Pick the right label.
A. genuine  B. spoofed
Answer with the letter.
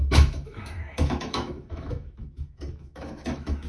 B